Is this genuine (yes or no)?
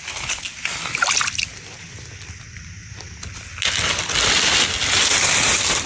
yes